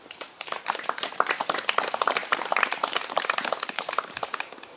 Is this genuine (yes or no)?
no